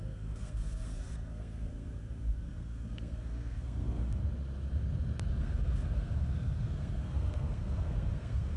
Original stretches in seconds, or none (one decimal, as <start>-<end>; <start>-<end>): 4.2-5.4

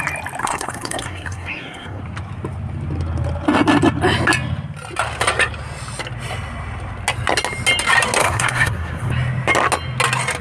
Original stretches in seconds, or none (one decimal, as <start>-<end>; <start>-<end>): 0.0-0.4; 2.0-8.2; 9.1-10.4